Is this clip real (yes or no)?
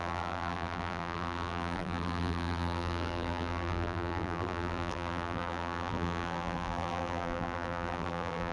no